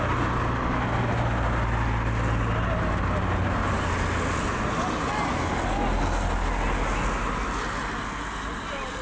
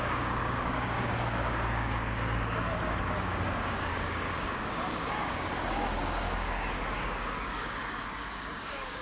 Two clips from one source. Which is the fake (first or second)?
second